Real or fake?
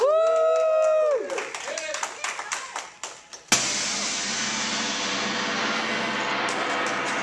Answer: real